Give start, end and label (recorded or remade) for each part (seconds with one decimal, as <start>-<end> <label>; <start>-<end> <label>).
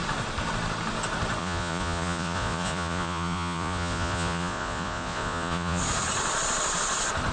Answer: 0.0-1.4 recorded; 1.4-5.8 remade; 5.8-7.3 recorded